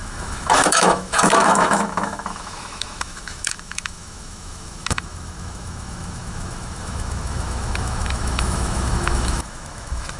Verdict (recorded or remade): remade